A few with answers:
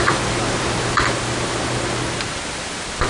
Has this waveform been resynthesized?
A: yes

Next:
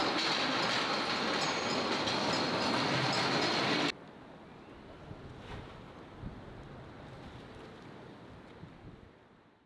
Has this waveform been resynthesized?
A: no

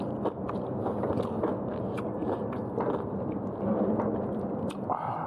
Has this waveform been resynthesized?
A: no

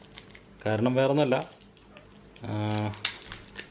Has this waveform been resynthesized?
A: no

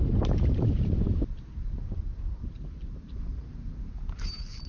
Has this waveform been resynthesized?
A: yes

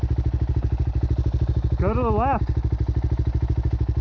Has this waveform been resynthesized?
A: no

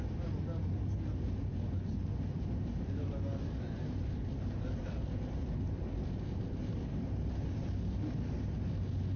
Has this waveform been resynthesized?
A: no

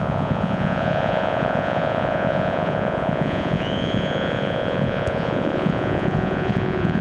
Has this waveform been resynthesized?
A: yes